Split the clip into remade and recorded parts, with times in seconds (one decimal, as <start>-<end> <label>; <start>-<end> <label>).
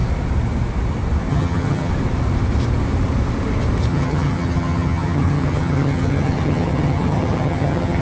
0.0-1.3 recorded; 1.3-1.9 remade; 1.9-3.9 recorded; 3.9-8.0 remade